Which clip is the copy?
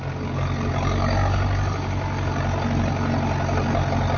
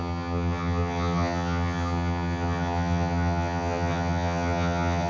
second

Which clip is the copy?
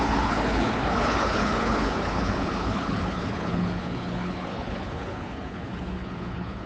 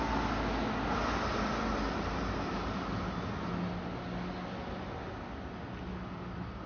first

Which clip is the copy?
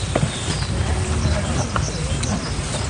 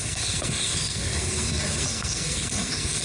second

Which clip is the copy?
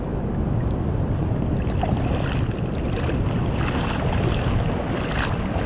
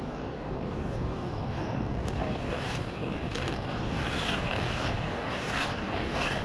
second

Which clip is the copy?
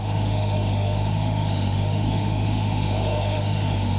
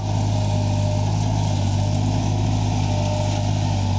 first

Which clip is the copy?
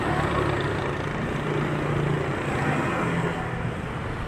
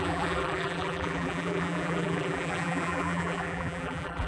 second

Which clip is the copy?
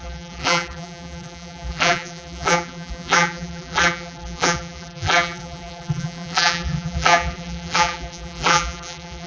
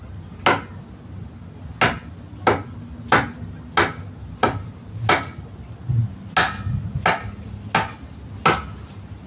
first